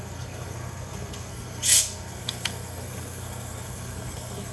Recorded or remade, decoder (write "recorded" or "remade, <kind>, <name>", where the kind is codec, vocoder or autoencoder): remade, codec, SNAC